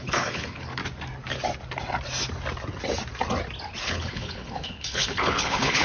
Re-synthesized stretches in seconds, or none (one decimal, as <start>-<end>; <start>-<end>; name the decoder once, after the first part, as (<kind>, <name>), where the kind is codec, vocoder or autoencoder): 0.0-0.8 (codec, HILCodec); 3.8-5.8